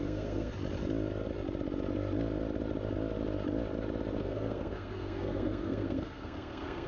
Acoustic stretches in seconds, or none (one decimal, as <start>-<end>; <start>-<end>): 0.5-4.2